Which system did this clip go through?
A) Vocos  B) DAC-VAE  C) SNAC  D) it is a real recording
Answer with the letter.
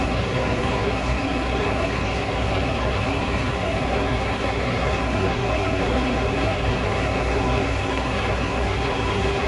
C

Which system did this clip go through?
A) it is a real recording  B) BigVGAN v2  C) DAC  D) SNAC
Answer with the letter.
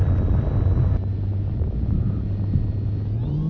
A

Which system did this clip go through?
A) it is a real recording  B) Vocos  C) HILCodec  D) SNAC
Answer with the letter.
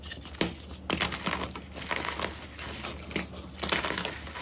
A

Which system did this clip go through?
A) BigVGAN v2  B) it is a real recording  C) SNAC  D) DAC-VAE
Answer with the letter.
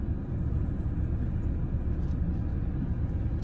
B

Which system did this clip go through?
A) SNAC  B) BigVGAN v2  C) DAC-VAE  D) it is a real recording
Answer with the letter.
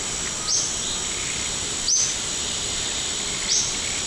D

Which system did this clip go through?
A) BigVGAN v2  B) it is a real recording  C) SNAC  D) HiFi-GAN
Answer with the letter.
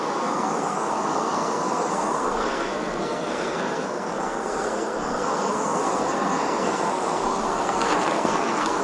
C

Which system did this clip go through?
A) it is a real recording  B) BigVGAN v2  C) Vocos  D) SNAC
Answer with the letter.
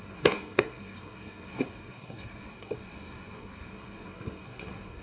D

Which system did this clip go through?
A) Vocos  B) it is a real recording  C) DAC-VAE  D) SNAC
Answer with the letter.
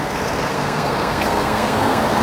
D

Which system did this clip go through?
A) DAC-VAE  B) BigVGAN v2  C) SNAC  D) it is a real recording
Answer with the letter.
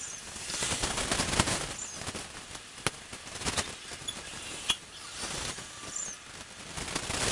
D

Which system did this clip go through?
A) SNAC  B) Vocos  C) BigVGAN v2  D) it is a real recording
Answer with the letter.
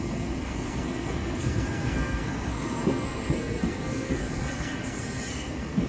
A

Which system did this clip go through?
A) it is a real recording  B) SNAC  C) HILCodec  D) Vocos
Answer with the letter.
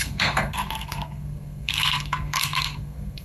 B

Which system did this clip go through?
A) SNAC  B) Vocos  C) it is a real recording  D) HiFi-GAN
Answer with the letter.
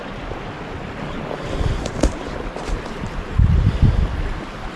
C